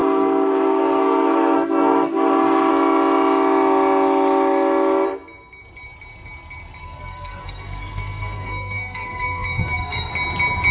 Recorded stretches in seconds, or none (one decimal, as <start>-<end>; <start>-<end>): 2.7-6.8; 10.1-10.7